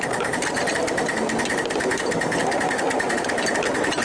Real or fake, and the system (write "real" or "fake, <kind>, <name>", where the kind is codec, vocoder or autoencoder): real